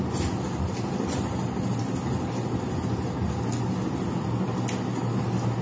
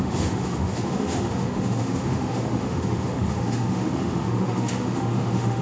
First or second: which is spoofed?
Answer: second